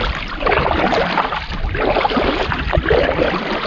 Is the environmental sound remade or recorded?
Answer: recorded